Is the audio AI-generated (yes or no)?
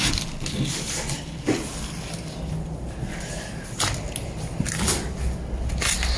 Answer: no